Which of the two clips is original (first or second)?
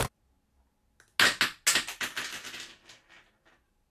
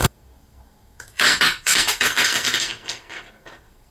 first